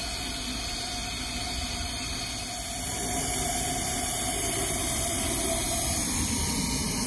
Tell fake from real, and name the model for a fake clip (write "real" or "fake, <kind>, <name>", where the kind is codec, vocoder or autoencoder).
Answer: real